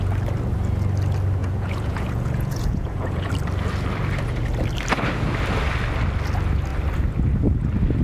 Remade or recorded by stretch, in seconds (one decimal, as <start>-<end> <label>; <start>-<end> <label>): 0.0-1.4 recorded; 1.4-3.3 remade; 3.3-8.0 recorded